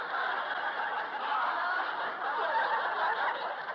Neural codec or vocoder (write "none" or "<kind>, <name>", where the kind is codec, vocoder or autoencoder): none